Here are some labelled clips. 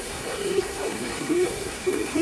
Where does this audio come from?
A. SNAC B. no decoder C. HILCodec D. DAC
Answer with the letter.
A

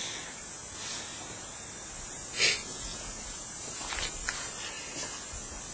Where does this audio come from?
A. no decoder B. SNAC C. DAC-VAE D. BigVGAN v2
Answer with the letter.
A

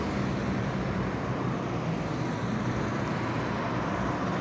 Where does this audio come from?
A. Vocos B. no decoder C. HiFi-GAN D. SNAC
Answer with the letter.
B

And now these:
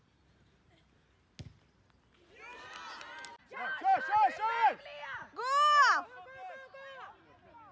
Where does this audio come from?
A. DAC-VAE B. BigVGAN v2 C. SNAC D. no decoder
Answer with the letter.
D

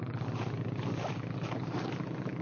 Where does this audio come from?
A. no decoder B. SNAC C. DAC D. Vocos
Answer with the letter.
A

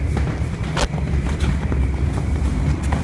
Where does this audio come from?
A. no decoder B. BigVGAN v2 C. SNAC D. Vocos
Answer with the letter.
A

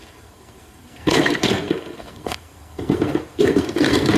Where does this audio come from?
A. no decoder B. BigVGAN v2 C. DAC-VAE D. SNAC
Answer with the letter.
D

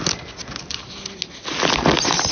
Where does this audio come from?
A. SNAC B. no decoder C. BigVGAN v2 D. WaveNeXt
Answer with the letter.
B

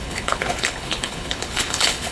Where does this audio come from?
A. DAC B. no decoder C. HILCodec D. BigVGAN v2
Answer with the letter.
C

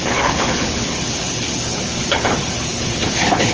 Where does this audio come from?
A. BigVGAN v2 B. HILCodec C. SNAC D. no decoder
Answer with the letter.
B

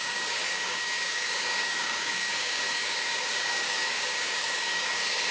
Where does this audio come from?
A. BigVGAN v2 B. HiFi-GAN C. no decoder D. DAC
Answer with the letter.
D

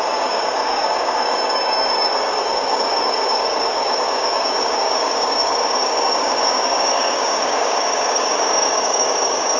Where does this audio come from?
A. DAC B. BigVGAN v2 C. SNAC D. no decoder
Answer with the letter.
A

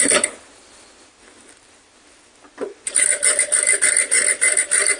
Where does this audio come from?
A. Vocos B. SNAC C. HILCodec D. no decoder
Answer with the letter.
D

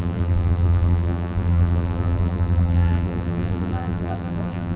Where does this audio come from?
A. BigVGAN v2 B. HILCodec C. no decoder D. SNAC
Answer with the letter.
A